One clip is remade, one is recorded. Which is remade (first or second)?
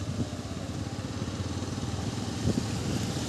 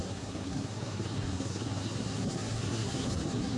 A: second